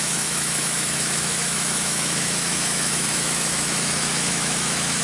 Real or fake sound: fake